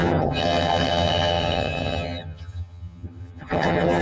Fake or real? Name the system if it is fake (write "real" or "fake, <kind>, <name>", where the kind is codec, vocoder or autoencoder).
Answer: fake, vocoder, HiFi-GAN